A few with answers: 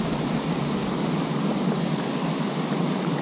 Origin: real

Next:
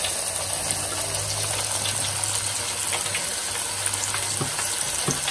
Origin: real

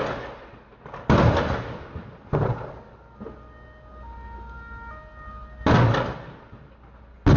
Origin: real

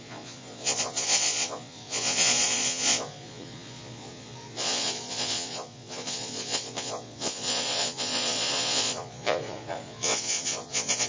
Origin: fake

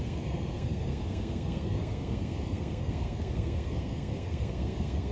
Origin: fake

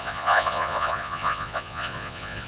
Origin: fake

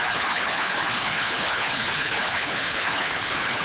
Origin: fake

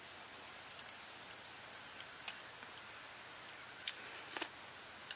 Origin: real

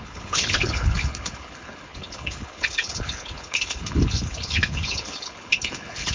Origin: fake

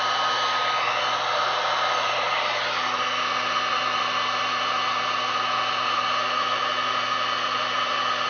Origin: real